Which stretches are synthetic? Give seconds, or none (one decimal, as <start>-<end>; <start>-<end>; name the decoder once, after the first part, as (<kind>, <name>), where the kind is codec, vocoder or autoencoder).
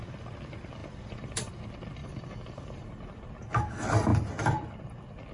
0.8-1.6 (vocoder, BigVGAN v2); 2.0-3.3